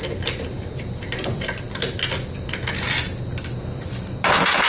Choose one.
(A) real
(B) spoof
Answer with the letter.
A